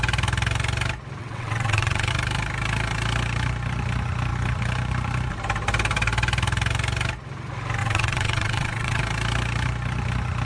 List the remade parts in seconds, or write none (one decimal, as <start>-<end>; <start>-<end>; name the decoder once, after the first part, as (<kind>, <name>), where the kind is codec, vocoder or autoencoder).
1.2-2.1 (vocoder, WaveNeXt); 7.8-9.0